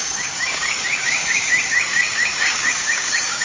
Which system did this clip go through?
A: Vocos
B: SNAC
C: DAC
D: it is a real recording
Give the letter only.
C